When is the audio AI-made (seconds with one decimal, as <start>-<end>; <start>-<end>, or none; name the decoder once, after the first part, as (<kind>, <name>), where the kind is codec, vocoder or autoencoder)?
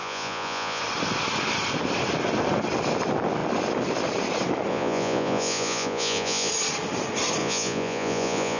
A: 0.0-0.8 (vocoder, Vocos); 4.7-6.5; 7.4-8.6